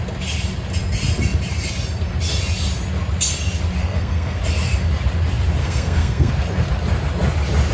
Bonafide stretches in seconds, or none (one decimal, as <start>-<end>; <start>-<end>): 0.0-3.8; 4.4-5.6; 6.3-7.7